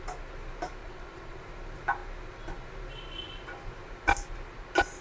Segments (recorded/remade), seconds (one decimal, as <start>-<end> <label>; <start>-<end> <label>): 0.0-0.8 recorded; 0.8-1.4 remade; 1.4-5.0 recorded